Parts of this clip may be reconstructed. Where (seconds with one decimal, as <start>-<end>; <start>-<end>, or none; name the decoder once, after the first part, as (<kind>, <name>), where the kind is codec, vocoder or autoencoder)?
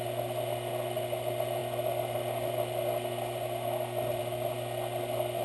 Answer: none